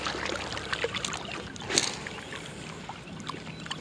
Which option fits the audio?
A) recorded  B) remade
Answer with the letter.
A